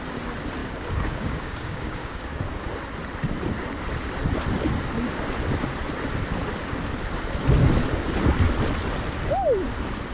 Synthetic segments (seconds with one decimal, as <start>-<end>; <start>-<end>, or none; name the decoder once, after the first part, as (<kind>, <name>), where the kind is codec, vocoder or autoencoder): 0.6-2.7 (codec, DAC)